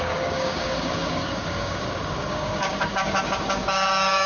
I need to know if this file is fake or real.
fake